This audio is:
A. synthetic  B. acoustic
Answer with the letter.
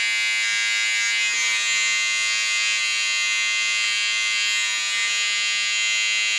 B